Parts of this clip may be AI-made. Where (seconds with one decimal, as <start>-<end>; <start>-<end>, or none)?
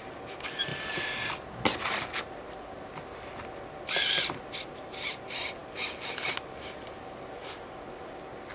none